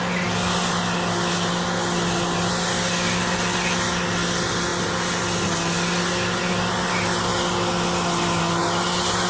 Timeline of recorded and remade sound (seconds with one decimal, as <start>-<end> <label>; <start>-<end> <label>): 0.0-9.3 recorded